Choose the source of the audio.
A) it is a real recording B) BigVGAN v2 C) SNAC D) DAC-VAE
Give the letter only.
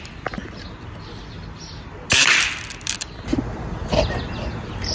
A